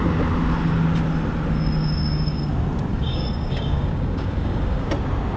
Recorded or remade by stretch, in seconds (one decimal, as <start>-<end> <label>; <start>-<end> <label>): 0.0-1.8 recorded; 1.8-2.5 remade; 2.5-2.9 recorded; 2.9-4.9 remade; 4.9-5.4 recorded